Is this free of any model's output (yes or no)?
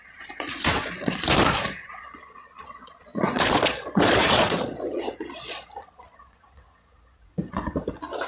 no